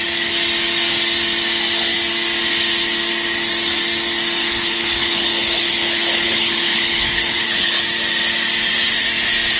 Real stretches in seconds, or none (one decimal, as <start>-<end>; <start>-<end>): 0.0-4.4; 7.8-9.6